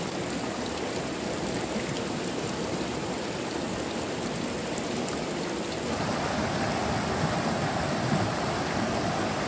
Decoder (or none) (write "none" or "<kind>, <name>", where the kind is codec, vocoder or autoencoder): none